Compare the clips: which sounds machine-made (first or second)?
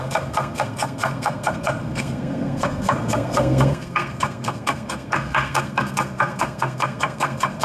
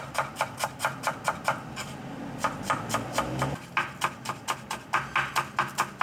first